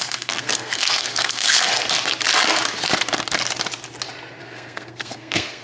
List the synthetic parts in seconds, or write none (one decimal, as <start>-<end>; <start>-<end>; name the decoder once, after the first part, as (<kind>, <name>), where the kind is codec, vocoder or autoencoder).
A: 0.0-1.7 (codec, SNAC); 4.4-5.6